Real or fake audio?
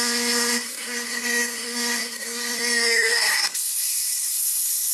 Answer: fake